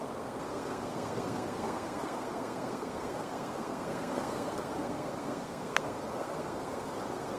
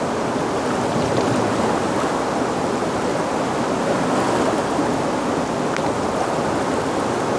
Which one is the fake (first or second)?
first